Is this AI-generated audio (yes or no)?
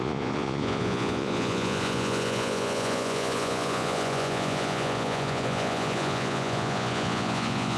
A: yes